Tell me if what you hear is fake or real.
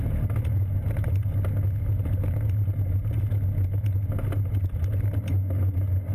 real